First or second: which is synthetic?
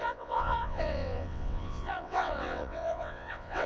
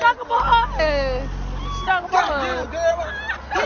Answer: first